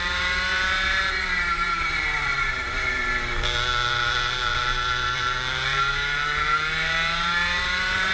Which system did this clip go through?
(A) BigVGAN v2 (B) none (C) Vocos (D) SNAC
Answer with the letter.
A